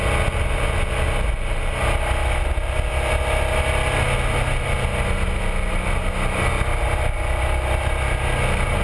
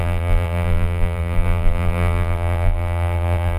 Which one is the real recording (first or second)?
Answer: first